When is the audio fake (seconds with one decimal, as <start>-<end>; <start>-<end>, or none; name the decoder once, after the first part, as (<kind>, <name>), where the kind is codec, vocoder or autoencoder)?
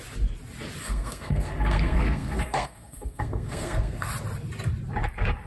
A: 0.8-4.1 (codec, SNAC)